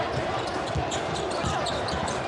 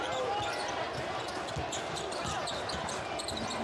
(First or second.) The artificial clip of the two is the first